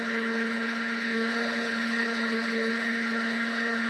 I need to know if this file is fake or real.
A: fake